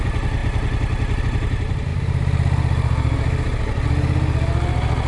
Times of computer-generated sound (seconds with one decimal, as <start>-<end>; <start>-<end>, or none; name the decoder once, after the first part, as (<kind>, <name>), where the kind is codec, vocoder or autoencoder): none